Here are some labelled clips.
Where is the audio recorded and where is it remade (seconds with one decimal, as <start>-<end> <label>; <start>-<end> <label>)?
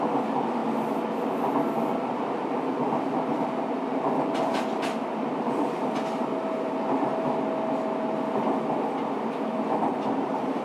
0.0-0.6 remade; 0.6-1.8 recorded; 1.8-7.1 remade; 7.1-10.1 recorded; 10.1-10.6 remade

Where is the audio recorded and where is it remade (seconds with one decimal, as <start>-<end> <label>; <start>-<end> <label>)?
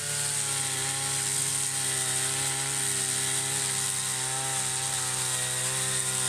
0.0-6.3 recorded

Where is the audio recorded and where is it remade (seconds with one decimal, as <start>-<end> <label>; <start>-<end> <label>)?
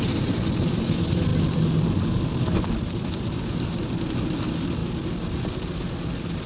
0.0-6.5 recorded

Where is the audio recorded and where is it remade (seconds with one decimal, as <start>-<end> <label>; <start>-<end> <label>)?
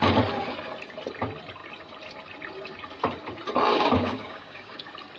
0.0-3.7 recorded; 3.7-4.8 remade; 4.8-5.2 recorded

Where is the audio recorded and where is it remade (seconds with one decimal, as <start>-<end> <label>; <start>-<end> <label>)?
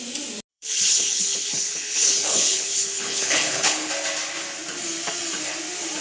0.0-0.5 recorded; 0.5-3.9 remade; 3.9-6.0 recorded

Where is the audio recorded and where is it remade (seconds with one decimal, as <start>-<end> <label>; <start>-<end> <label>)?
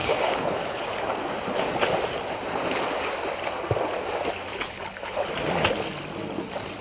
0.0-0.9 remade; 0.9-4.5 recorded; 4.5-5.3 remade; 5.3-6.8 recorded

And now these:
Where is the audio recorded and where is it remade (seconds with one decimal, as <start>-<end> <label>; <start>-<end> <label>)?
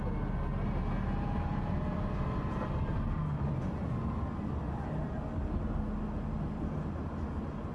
0.0-0.5 recorded; 0.5-5.0 remade; 5.0-7.7 recorded